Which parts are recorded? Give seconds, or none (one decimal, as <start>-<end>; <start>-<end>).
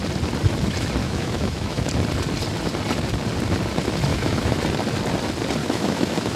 0.0-1.0; 1.9-4.1; 4.6-5.6